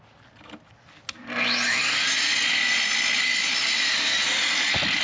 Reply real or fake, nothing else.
real